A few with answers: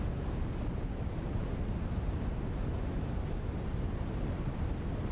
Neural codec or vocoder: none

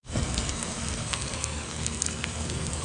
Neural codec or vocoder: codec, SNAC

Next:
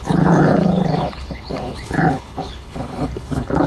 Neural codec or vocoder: codec, HILCodec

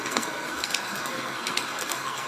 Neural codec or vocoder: codec, SNAC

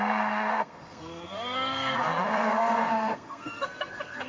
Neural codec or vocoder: codec, SNAC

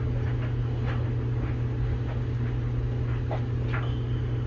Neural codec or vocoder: none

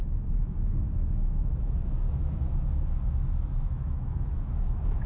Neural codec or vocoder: autoencoder, DAC-VAE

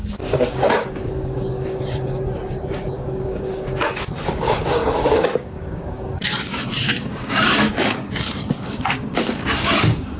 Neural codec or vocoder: codec, DAC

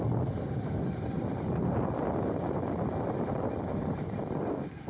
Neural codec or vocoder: none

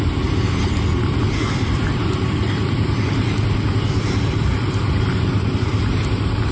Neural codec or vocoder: none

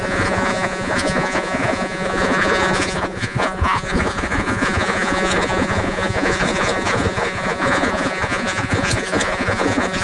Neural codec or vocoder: vocoder, Vocos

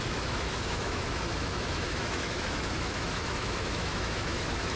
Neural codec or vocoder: autoencoder, DAC-VAE